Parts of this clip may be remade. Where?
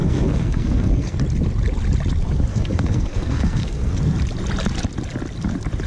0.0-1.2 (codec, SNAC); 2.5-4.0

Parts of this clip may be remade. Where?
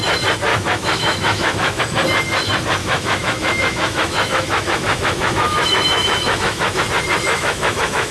0.5-1.8 (autoencoder, DAC-VAE); 2.8-6.8; 7.3-8.1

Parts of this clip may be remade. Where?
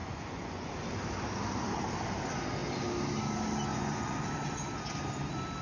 0.0-0.7 (vocoder, Vocos); 3.7-4.2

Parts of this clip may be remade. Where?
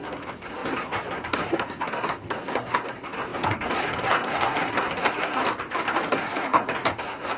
0.0-5.4 (codec, SNAC); 6.1-7.4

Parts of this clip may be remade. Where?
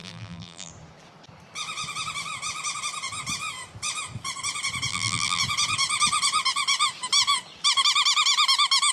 0.0-0.7 (vocoder, BigVGAN v2); 4.9-5.4